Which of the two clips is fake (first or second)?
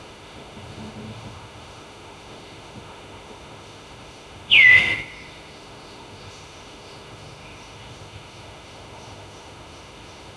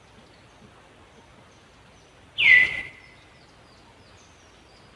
first